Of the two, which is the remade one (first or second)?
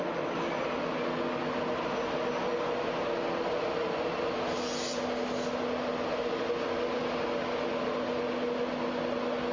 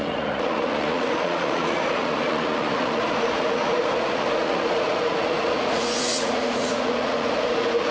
second